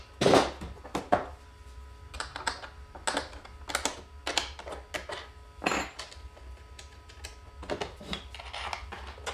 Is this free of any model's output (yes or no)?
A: yes